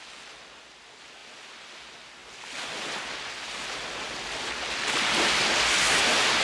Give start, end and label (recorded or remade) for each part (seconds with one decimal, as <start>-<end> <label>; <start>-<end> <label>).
0.0-6.4 recorded